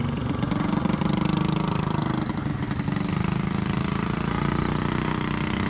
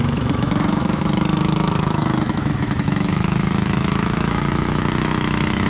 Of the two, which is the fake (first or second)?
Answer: second